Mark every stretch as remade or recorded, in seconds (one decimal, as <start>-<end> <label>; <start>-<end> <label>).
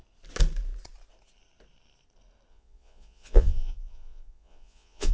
0.0-2.5 recorded; 2.5-5.1 remade